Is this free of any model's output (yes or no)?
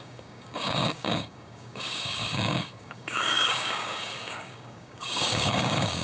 no